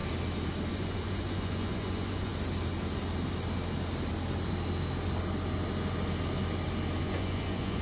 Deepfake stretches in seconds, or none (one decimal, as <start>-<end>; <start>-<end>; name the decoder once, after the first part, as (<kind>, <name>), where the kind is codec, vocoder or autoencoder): 0.7-2.3 (vocoder, Vocos); 7.0-7.8